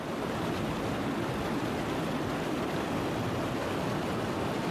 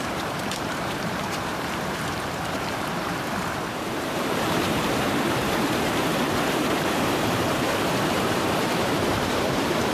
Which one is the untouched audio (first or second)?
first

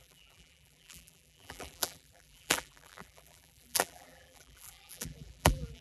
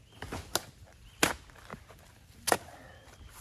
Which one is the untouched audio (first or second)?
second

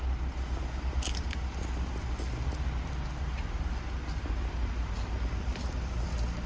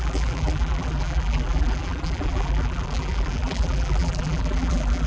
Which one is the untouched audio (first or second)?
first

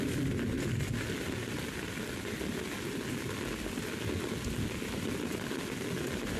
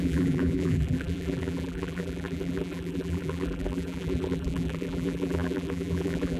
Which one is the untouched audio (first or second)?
first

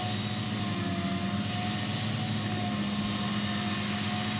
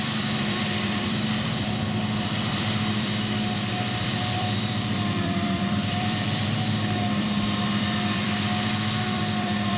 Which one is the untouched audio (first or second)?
first